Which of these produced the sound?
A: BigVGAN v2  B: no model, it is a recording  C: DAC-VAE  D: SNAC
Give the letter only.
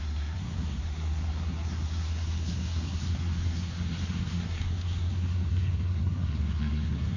D